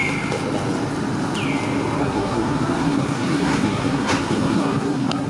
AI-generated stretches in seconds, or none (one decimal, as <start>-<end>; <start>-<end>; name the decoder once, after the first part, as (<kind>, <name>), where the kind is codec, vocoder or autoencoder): 2.0-5.3 (codec, SNAC)